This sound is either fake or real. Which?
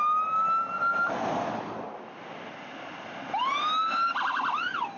real